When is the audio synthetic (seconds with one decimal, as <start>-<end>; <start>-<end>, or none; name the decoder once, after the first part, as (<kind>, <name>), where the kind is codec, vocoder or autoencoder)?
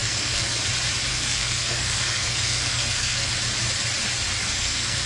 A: 0.0-0.6 (codec, SNAC); 1.1-3.3; 4.4-5.1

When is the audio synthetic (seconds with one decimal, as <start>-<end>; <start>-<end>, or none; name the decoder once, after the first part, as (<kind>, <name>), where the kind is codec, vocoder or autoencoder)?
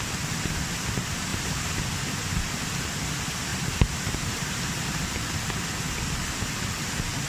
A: 1.3-1.8 (vocoder, BigVGAN v2); 3.5-5.3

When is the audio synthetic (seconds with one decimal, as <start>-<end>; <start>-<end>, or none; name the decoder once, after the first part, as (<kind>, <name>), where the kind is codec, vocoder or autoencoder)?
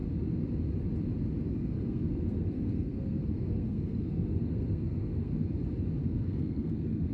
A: 1.5-5.3 (codec, SNAC); 6.0-7.1